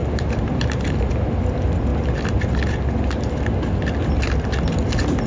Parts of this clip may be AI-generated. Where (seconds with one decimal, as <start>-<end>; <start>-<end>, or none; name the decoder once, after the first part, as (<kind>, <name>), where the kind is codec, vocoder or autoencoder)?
0.0-1.1 (vocoder, BigVGAN v2)